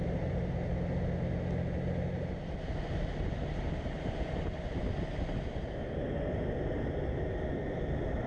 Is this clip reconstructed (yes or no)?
no